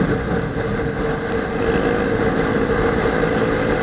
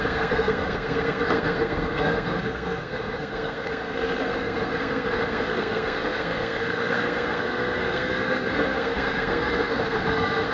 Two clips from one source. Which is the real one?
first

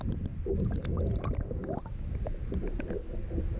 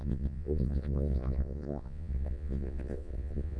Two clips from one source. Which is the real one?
first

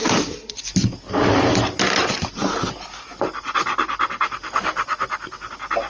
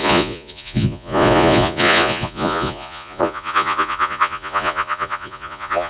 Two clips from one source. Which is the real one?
first